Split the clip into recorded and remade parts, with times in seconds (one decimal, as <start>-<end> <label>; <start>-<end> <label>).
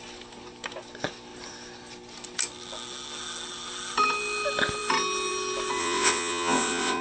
0.0-5.8 recorded; 5.8-7.0 remade